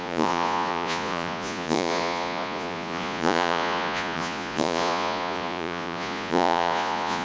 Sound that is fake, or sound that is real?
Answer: fake